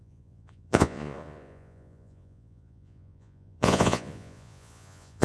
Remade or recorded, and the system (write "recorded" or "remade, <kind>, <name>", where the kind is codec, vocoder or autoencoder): remade, vocoder, Vocos